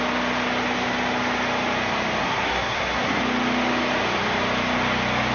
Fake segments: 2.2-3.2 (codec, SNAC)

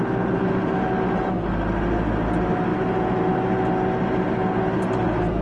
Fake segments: none

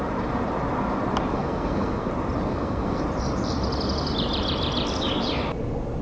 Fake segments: 1.3-2.1 (codec, SNAC); 2.5-3.0

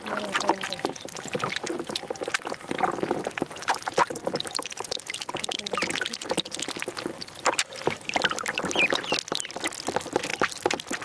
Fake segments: none

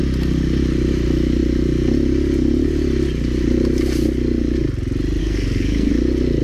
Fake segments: 5.2-5.9 (codec, SNAC)

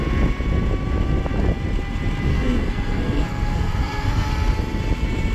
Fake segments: 2.3-4.3 (codec, SNAC)